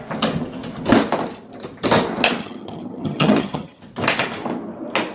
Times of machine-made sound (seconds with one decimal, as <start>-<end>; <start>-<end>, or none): 2.4-3.8